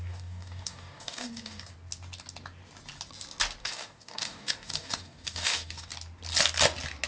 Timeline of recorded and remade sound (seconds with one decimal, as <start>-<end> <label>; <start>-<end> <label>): 0.0-1.7 remade; 1.7-3.6 recorded; 3.6-5.9 remade; 5.9-7.1 recorded

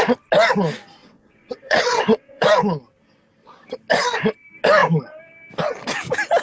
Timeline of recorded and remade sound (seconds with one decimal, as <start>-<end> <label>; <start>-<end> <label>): 0.0-1.0 recorded; 1.0-2.5 remade; 2.5-6.4 recorded

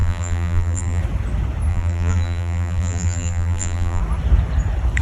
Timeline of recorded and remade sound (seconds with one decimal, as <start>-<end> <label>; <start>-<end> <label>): 0.0-1.0 remade; 1.0-1.7 recorded; 1.7-4.0 remade; 4.0-5.0 recorded